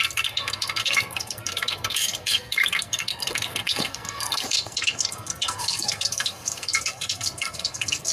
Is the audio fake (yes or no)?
yes